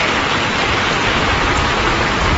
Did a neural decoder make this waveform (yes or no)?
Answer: no